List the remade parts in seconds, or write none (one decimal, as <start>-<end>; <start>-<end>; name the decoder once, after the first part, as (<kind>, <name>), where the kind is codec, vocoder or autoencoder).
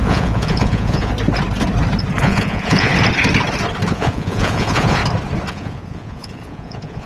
0.0-1.1 (vocoder, Vocos); 2.2-2.9; 3.9-5.0; 5.5-7.1